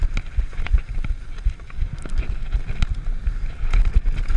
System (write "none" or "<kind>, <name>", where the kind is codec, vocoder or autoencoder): none